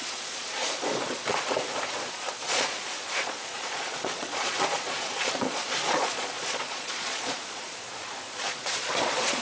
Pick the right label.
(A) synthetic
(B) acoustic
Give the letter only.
A